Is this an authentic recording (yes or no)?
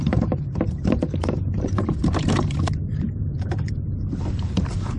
no